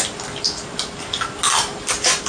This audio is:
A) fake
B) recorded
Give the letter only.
B